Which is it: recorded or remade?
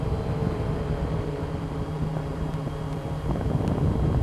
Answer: remade